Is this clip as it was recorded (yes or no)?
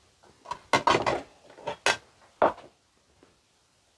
yes